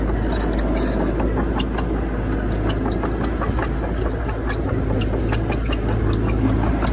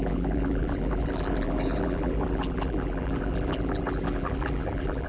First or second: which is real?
first